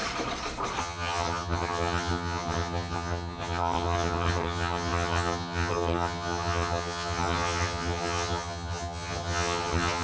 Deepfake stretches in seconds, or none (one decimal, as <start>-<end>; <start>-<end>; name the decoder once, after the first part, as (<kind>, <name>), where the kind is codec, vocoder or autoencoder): 0.8-10.0 (vocoder, HiFi-GAN)